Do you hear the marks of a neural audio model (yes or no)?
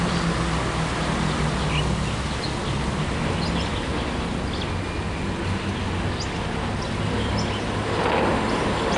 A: no